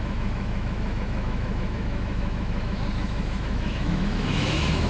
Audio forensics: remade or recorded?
remade